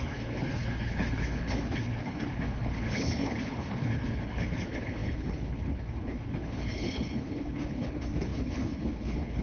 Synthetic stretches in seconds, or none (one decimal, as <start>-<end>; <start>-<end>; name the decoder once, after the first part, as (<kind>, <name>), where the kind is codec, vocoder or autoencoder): 0.0-9.4 (codec, HILCodec)